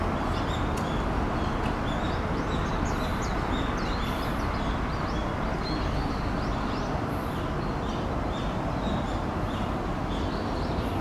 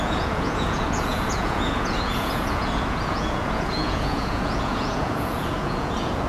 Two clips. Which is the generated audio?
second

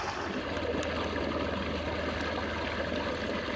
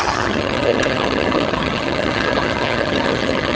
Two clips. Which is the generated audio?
second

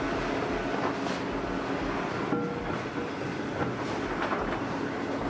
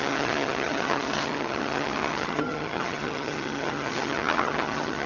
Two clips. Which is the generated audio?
second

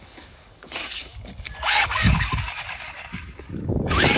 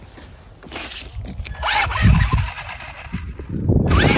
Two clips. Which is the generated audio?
first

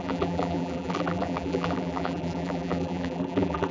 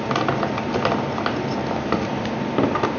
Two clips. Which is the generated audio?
first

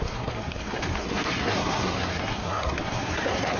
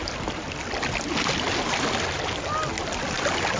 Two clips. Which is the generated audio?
first